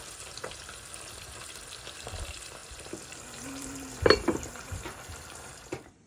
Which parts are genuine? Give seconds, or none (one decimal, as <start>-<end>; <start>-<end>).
2.6-3.4